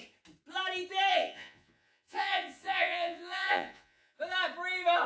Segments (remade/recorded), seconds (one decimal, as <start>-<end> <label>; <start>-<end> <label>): 0.0-1.1 recorded; 1.1-4.2 remade; 4.2-5.1 recorded